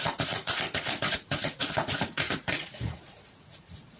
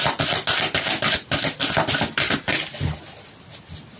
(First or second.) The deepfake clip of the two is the first